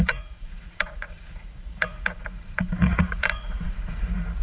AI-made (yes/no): yes